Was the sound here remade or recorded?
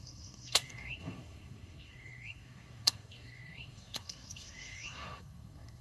remade